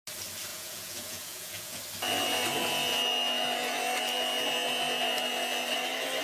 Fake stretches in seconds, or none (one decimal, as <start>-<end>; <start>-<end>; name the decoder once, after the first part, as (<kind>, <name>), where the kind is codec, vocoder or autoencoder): 0.5-1.8 (vocoder, Vocos)

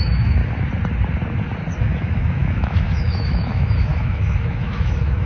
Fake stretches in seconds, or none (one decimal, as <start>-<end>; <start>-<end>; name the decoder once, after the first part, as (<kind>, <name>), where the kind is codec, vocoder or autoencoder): 0.0-0.4 (autoencoder, DAC-VAE); 1.8-5.3

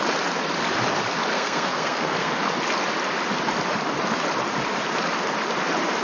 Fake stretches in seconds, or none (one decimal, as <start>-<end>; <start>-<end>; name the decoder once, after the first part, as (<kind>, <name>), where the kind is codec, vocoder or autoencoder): 1.3-2.3 (codec, SNAC)

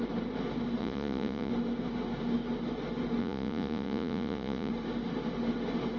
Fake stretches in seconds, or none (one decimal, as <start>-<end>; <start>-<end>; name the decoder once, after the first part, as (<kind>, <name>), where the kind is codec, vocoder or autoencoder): 0.8-1.5 (vocoder, Vocos); 3.2-4.7

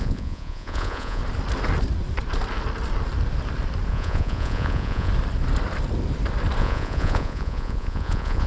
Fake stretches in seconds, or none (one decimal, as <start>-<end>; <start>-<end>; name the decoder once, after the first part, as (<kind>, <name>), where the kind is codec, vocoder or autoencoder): 0.0-1.2 (vocoder, Vocos); 3.9-5.1; 6.6-8.5

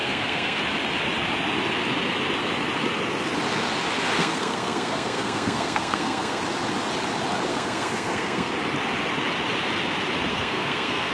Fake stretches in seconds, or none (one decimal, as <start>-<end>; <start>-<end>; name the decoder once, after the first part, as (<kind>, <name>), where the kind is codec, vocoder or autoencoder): 0.0-0.6 (codec, SNAC); 4.2-6.4; 7.5-8.5; 10.3-11.1